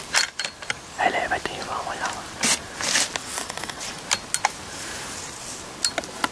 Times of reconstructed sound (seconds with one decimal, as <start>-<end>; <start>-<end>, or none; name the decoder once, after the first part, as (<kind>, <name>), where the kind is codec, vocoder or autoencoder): 3.2-3.8 (vocoder, WaveNeXt)